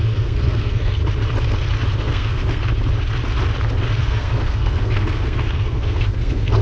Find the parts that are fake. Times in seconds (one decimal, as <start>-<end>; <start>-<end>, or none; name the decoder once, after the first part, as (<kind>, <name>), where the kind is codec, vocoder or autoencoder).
0.0-1.0 (codec, SNAC); 2.0-2.6; 4.0-6.6